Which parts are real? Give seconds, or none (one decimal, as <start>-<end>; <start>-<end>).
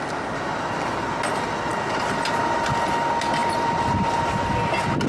0.0-3.4; 4.2-5.1